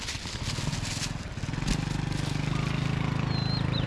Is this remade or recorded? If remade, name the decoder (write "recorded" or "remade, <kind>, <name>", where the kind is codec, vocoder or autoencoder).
recorded